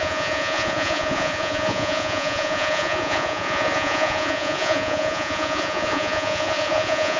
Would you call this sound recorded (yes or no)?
no